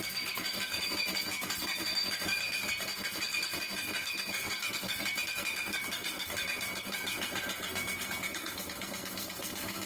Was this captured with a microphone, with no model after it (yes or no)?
no